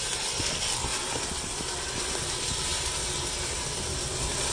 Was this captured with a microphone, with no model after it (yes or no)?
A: yes